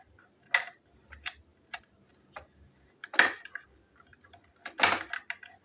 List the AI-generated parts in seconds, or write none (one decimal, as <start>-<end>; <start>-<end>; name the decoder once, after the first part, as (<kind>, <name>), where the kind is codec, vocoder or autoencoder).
none